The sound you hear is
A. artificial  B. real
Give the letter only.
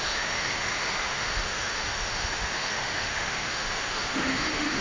A